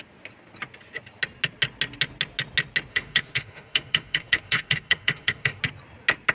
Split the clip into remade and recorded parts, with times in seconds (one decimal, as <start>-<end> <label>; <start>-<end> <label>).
0.0-2.9 recorded; 2.9-5.6 remade; 5.6-6.3 recorded